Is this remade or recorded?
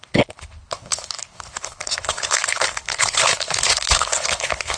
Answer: remade